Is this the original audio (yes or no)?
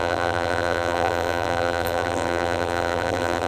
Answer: no